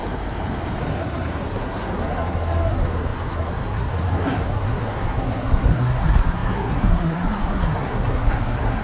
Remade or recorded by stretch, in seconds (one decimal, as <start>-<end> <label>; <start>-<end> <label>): 0.0-0.8 recorded; 0.8-8.8 remade